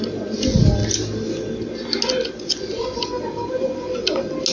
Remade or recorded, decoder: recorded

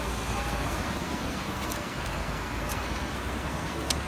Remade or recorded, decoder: remade, codec, SNAC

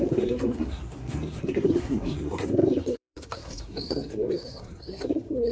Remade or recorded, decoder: remade, codec, SNAC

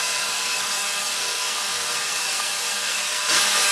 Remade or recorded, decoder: remade, codec, SNAC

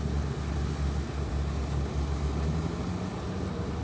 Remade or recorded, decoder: recorded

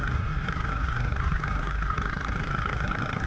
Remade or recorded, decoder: remade, codec, SNAC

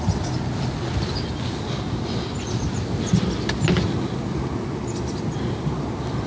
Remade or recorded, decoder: recorded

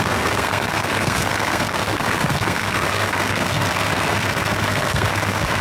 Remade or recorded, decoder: remade, codec, SNAC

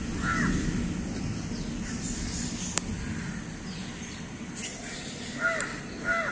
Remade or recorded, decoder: recorded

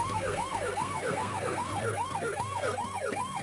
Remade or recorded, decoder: remade, codec, SNAC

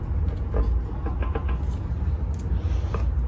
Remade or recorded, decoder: recorded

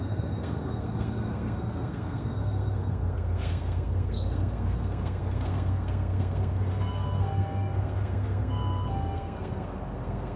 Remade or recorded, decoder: remade, codec, SNAC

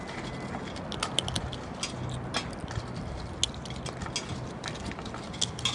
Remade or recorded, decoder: recorded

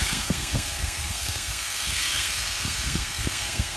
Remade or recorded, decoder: remade, codec, SNAC